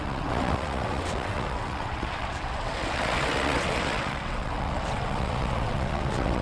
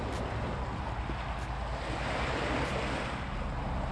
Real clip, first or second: second